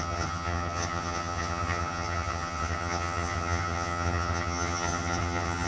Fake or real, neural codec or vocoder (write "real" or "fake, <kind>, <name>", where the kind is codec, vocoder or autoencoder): fake, vocoder, HiFi-GAN